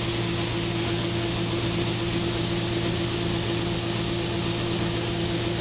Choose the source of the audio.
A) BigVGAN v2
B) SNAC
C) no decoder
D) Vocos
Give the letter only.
C